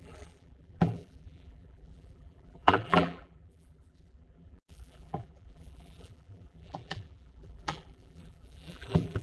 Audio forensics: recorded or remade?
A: remade